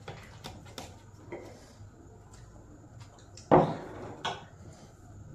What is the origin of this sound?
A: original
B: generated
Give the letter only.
A